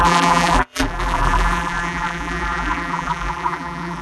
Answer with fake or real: fake